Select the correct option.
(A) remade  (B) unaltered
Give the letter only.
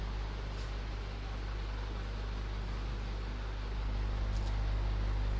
B